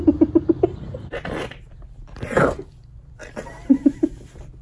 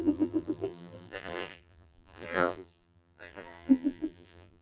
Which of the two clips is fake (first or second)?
second